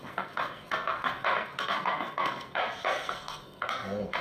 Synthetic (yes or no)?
yes